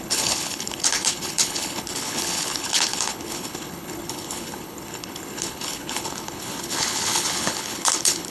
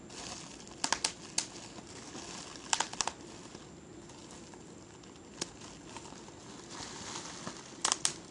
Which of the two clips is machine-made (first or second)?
first